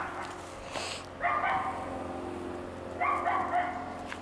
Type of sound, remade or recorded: recorded